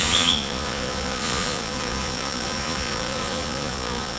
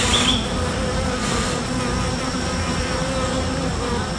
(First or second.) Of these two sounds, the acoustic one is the second